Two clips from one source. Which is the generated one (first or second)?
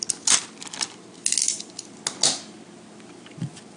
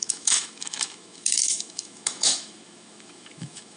second